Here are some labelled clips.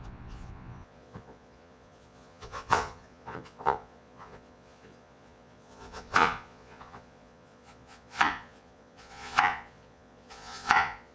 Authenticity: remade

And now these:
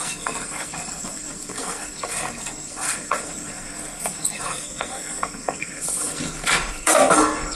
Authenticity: remade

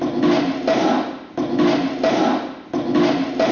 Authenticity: recorded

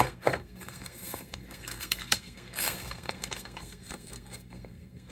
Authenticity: remade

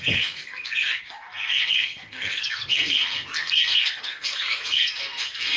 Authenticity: remade